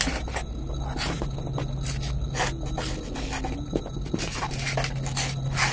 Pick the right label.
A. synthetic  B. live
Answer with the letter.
B